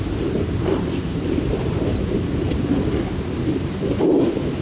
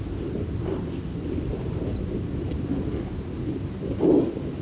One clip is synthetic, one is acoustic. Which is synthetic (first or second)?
first